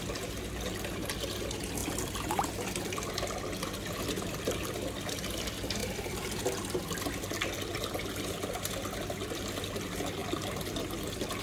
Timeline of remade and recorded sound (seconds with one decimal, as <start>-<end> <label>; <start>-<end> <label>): 0.0-1.8 recorded; 1.8-3.1 remade; 3.1-5.8 recorded; 5.8-6.8 remade; 6.8-11.4 recorded